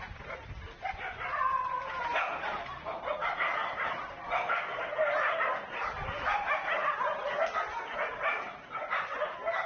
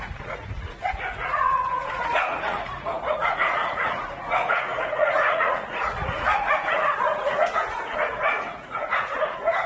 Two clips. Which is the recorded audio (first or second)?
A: first